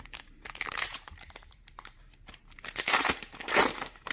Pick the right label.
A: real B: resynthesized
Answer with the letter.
B